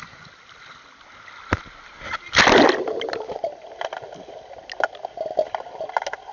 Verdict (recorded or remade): recorded